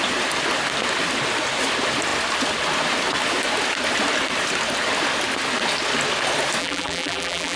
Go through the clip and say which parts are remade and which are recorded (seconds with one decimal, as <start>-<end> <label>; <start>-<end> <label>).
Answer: 0.0-6.6 recorded; 6.6-7.6 remade